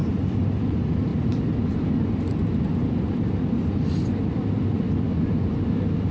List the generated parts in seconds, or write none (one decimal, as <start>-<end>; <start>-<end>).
none